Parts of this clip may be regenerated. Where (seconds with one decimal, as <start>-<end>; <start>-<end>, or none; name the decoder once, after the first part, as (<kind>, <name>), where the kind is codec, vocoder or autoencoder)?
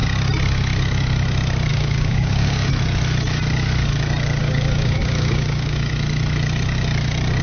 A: 1.7-2.7 (codec, DAC); 4.4-5.9